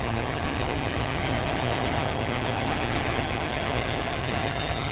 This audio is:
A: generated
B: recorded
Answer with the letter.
A